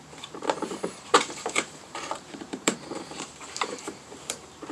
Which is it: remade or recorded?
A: remade